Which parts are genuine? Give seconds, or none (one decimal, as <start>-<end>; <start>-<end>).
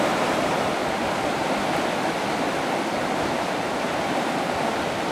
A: 0.8-3.2